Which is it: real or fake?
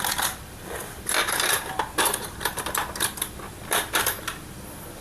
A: real